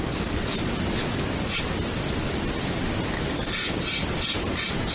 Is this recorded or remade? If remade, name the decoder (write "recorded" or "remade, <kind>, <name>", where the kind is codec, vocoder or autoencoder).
recorded